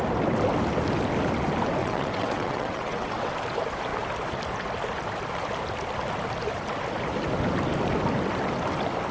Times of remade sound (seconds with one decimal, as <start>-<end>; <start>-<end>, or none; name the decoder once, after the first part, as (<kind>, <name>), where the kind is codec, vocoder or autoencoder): 1.8-3.3 (vocoder, WaveNeXt)